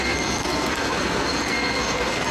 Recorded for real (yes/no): no